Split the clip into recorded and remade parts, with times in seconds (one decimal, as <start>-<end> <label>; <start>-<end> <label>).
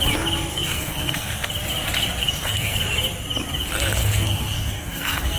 0.0-0.5 recorded; 0.5-1.5 remade; 1.5-2.2 recorded; 2.2-2.8 remade; 2.8-4.0 recorded; 4.0-5.4 remade